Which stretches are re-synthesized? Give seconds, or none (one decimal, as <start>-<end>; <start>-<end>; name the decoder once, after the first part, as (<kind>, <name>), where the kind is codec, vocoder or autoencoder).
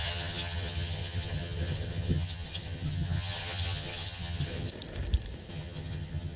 0.0-4.7 (vocoder, HiFi-GAN); 5.5-6.4